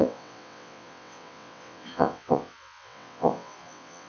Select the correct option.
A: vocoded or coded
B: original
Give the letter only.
A